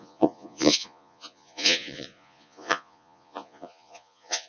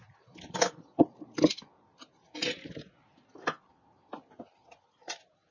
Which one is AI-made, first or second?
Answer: first